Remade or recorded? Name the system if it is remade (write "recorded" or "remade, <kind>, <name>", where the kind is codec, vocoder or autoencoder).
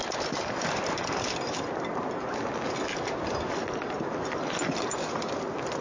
recorded